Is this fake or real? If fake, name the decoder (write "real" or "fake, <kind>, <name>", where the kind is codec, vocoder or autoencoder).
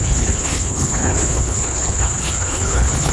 fake, codec, HILCodec